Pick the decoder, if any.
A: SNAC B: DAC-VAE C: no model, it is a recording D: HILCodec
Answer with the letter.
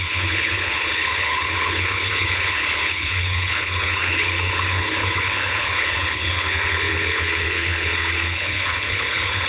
D